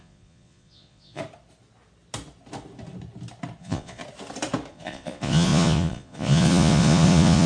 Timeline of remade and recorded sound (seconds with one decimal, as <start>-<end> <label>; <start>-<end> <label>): 0.0-1.2 remade; 1.2-3.6 recorded; 3.6-4.0 remade; 4.0-4.7 recorded; 4.7-7.5 remade